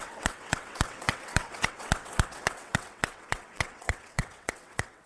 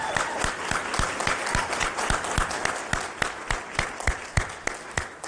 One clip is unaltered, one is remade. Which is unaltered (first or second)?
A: second